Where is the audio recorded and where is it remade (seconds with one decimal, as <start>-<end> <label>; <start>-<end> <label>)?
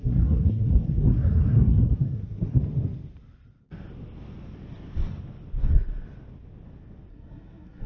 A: 0.0-2.6 remade; 2.6-7.1 recorded; 7.1-7.9 remade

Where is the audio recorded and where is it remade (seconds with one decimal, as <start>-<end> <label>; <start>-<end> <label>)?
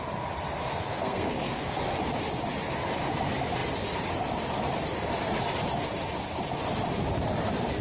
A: 0.0-0.7 recorded; 0.7-1.8 remade; 1.8-7.8 recorded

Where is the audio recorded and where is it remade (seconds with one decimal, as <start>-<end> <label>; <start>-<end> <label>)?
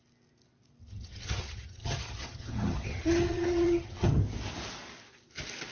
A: 0.0-0.8 recorded; 0.8-4.2 remade; 4.2-5.7 recorded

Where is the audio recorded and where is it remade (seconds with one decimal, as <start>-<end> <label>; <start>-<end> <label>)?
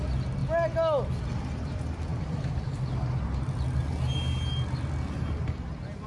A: 0.0-2.1 recorded; 2.1-3.9 remade; 3.9-6.1 recorded